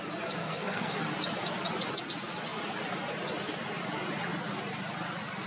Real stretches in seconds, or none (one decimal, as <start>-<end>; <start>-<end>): 0.0-0.4; 1.0-5.5